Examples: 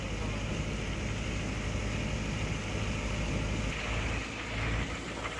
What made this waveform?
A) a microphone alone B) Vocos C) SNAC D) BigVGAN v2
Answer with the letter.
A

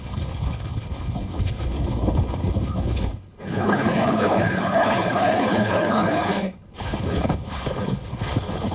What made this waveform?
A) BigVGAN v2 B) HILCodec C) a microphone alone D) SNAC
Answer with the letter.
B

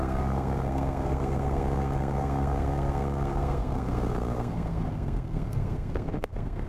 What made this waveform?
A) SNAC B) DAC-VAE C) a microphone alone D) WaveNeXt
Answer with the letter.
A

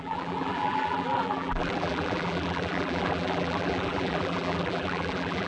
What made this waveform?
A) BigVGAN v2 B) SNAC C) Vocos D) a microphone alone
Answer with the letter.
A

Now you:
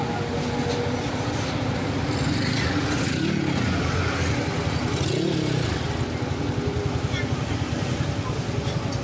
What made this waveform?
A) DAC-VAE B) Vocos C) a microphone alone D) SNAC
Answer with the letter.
C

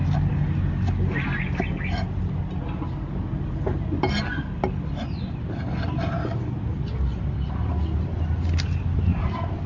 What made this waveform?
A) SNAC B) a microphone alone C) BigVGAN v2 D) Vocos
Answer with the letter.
B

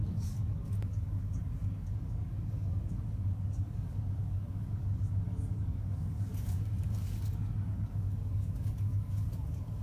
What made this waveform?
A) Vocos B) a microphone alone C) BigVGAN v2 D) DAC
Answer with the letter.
D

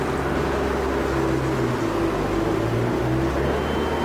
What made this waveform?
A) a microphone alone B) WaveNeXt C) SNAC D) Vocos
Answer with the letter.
A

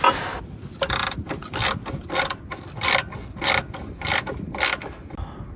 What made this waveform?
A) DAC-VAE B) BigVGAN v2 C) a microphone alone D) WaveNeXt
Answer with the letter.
C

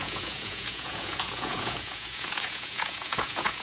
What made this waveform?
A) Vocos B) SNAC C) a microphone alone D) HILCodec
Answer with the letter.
A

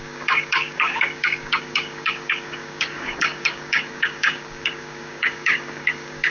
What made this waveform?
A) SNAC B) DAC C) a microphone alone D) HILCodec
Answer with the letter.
B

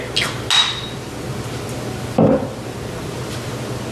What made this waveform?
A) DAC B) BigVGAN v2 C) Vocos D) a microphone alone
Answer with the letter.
D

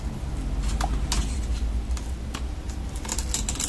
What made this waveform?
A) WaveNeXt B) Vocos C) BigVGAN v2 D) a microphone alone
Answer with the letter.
D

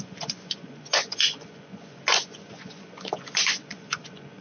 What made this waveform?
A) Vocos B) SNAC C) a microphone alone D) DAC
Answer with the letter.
A